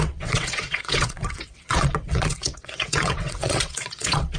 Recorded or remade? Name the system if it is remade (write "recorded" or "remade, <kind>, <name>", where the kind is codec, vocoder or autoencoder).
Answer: remade, vocoder, WaveNeXt